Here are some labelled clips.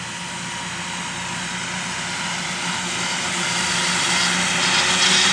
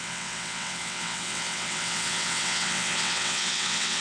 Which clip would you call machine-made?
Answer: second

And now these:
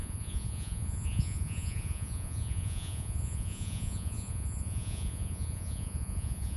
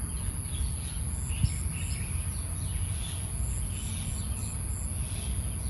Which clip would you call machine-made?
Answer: first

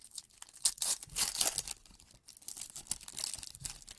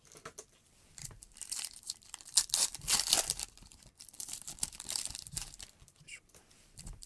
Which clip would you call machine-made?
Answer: second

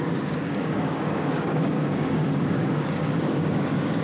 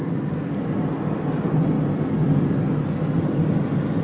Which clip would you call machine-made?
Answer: first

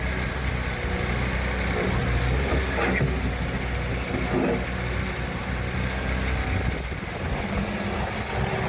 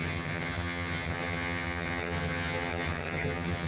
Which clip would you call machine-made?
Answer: second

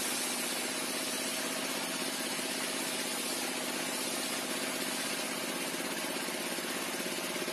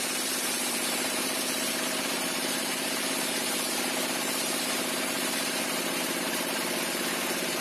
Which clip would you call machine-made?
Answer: second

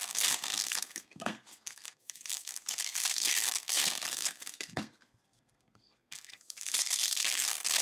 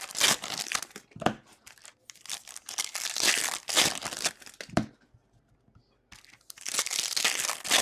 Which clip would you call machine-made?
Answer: first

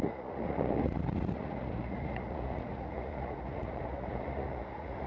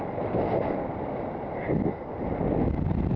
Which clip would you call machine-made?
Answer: first